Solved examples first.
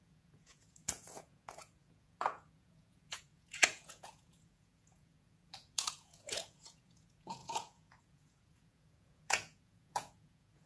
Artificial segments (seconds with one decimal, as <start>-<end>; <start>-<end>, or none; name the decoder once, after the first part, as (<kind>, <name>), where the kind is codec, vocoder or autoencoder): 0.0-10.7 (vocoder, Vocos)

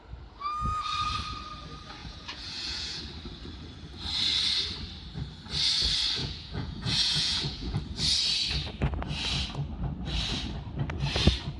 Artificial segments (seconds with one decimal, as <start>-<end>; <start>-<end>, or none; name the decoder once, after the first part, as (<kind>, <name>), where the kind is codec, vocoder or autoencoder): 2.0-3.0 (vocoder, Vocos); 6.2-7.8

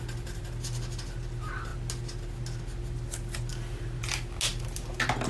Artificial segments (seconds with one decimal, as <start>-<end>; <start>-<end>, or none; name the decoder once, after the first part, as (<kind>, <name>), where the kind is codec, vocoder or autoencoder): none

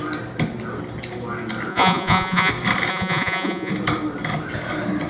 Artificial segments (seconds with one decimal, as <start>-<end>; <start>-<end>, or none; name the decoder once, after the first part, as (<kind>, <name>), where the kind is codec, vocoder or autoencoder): 1.7-2.5 (vocoder, Vocos); 2.9-3.7

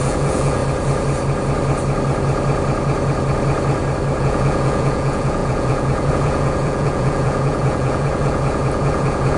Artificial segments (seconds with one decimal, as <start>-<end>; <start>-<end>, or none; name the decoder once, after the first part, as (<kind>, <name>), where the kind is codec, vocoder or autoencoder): 0.0-0.6 (vocoder, Vocos); 4.2-9.4

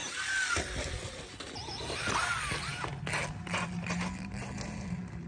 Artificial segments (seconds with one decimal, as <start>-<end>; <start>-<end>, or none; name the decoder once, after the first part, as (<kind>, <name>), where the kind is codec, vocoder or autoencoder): none

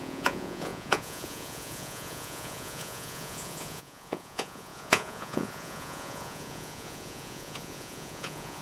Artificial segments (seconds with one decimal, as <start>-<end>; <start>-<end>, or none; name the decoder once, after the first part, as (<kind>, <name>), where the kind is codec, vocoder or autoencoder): 0.0-8.6 (vocoder, Vocos)

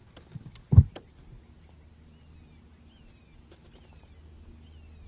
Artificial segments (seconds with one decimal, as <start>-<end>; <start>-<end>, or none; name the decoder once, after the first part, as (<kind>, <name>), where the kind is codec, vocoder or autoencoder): none